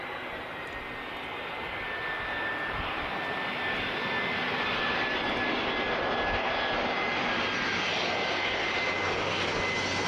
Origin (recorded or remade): recorded